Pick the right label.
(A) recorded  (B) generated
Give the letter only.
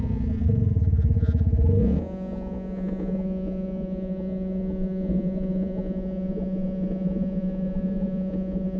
B